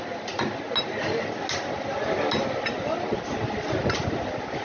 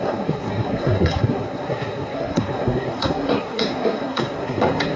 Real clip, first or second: first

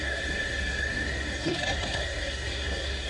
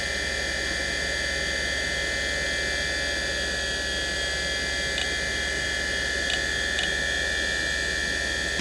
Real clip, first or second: second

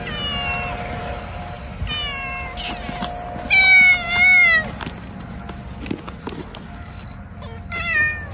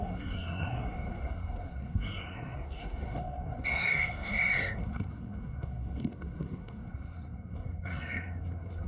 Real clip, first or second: first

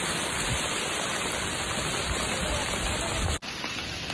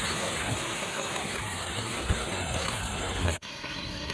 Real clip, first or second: first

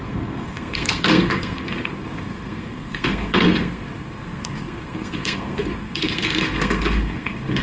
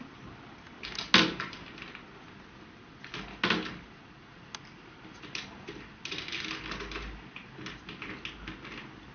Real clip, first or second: second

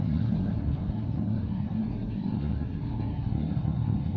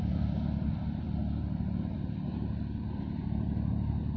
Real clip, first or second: second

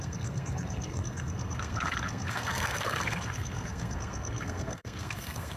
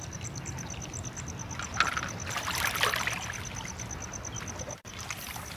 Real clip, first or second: second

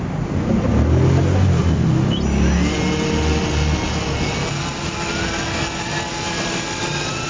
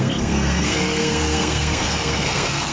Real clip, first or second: first